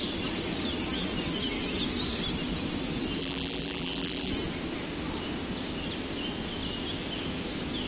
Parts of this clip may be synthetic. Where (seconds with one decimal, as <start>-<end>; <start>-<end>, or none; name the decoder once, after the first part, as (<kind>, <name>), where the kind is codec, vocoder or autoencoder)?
3.2-4.3 (vocoder, BigVGAN v2)